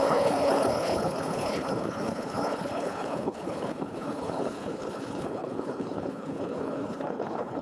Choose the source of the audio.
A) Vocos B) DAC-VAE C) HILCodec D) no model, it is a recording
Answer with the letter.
C